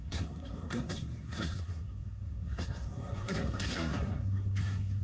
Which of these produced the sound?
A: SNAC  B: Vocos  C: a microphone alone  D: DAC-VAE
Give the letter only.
A